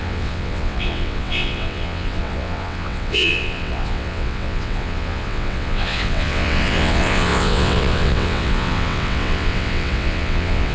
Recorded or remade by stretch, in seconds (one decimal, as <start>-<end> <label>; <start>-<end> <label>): 0.0-10.7 remade